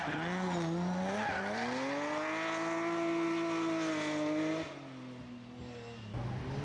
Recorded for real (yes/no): yes